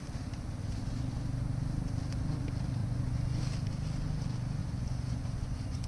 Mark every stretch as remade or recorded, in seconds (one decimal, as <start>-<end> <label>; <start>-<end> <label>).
0.0-2.8 recorded; 2.8-3.4 remade; 3.4-4.6 recorded; 4.6-5.9 remade